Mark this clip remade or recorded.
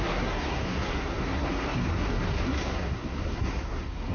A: remade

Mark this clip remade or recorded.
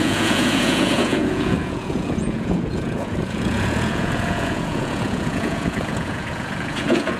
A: remade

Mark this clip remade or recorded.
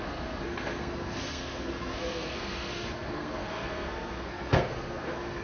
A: remade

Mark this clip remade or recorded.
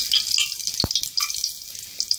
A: recorded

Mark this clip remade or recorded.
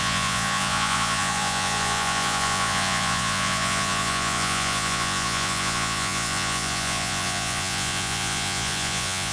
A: remade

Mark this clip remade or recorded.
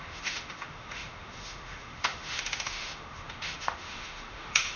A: remade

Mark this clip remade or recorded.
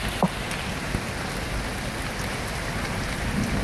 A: recorded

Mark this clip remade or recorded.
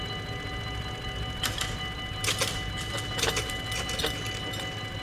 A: recorded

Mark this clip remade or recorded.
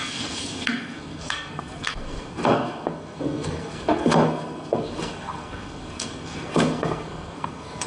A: remade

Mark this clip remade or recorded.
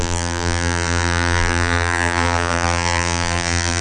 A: remade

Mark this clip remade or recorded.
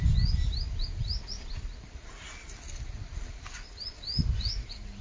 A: recorded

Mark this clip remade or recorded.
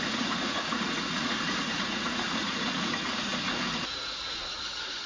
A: remade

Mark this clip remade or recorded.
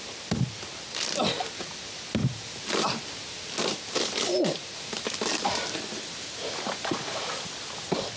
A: recorded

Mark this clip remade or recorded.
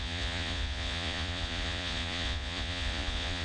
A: remade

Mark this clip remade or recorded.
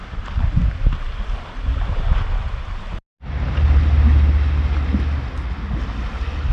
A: recorded